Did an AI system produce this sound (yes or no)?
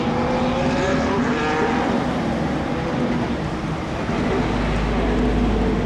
no